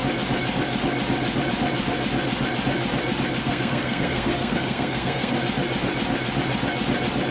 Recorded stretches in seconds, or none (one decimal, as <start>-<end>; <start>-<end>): 0.0-3.4; 5.4-7.3